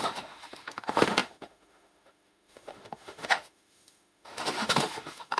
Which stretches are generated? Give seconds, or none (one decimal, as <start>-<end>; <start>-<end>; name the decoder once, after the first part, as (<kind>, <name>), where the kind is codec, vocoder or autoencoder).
0.0-5.4 (autoencoder, DAC-VAE)